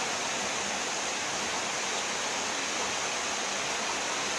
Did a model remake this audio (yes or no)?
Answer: no